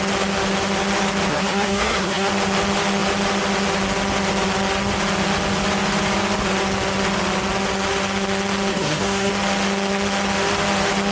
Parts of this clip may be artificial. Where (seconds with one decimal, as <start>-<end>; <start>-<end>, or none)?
1.3-2.3; 8.7-9.3